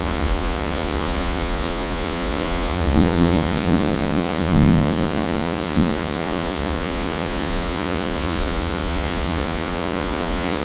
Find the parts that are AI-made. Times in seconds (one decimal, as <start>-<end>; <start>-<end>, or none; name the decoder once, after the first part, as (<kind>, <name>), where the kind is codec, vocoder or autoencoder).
0.0-10.6 (vocoder, Vocos)